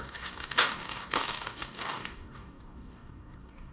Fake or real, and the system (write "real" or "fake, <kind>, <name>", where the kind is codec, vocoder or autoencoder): fake, codec, DAC